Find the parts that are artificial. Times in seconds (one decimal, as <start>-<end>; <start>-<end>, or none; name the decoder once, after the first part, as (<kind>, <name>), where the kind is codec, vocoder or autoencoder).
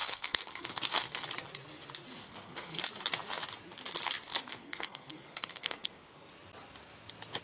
0.0-1.2 (codec, SNAC); 2.2-2.8; 4.3-6.3